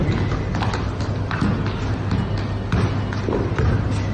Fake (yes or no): no